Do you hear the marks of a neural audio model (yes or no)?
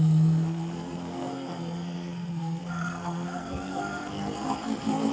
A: yes